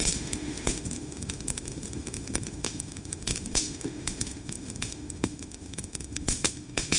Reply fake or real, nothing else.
fake